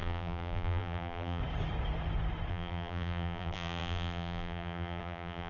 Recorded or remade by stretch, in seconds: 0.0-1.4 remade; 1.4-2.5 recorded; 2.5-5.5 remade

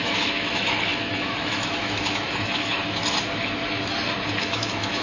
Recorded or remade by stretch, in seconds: 0.0-2.7 remade; 2.7-4.3 recorded; 4.3-5.0 remade

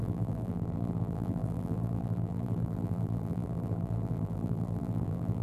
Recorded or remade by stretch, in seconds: 0.0-5.4 remade